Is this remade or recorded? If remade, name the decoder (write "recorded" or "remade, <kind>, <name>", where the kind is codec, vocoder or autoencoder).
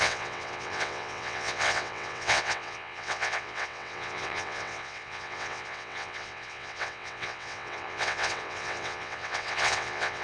remade, vocoder, WaveNeXt